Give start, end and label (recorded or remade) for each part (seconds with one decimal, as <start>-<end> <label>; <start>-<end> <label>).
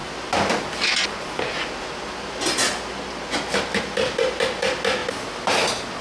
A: 0.0-6.0 recorded